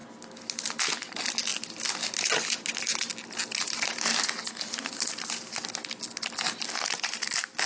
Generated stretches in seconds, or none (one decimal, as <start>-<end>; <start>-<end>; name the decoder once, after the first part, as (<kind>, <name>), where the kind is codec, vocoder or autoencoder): none